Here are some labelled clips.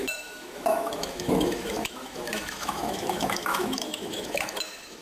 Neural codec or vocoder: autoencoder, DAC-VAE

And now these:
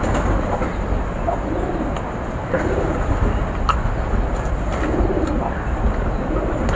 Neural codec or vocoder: none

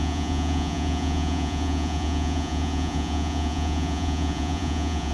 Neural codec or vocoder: vocoder, Vocos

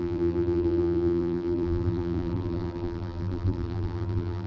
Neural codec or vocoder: vocoder, BigVGAN v2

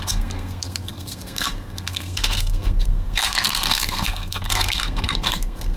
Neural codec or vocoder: codec, SNAC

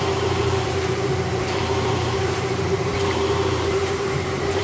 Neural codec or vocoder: vocoder, BigVGAN v2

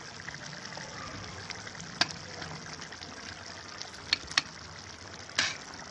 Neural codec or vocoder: none